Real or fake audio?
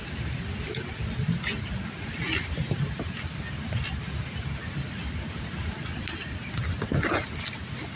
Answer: real